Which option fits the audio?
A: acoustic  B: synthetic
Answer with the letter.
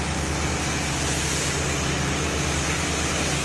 A